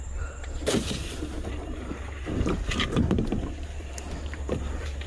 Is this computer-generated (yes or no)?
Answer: yes